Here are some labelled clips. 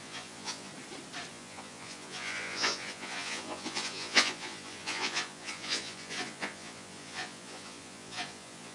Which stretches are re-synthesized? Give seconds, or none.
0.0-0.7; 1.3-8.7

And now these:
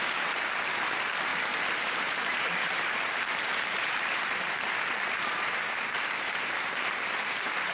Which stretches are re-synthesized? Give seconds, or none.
0.0-1.3; 1.8-7.7

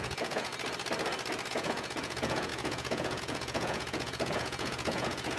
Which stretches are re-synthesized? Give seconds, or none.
0.0-0.5; 1.5-5.4